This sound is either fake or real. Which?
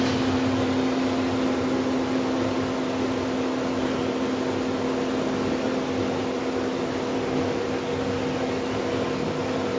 real